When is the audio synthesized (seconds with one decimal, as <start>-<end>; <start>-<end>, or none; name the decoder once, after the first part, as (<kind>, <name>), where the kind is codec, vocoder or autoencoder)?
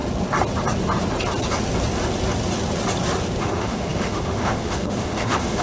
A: 3.4-5.6 (autoencoder, DAC-VAE)